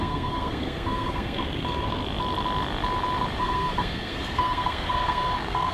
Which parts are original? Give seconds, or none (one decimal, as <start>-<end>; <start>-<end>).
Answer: 2.0-3.4